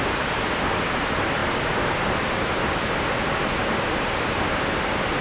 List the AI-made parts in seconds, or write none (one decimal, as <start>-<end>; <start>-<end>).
none

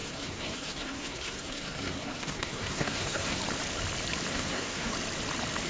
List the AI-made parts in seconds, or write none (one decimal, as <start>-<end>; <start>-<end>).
0.0-3.4; 4.3-4.9

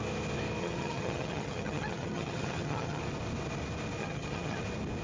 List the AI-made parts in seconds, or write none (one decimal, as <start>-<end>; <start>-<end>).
0.6-3.0; 4.0-4.6

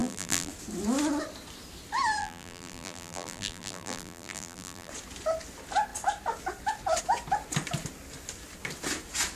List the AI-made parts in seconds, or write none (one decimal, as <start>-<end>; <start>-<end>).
0.0-0.5; 2.2-4.9

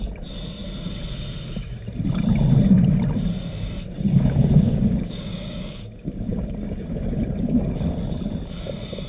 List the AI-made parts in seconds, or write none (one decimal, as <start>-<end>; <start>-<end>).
4.1-7.9